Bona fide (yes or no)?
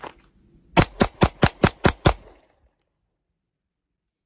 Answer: yes